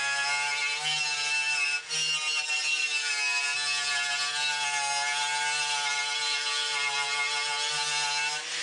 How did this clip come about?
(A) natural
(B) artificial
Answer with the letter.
A